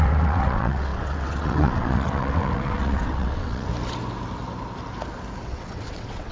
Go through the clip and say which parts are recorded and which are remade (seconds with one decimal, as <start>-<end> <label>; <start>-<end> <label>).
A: 0.0-3.7 remade; 3.7-5.4 recorded; 5.4-6.3 remade